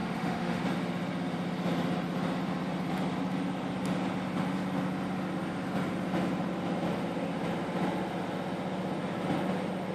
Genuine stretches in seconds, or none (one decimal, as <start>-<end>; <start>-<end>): 0.6-9.9